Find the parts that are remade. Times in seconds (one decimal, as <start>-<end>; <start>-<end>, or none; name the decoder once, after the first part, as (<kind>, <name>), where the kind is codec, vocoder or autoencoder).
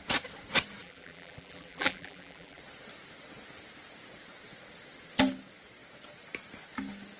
0.8-2.6 (vocoder, BigVGAN v2)